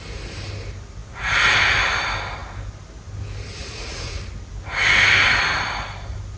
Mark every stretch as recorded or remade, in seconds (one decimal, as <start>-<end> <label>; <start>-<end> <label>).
0.0-3.6 recorded; 3.6-4.3 remade; 4.3-6.4 recorded